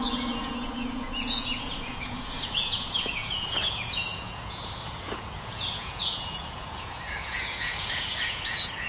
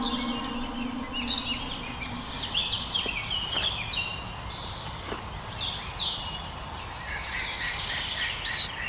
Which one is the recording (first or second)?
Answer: second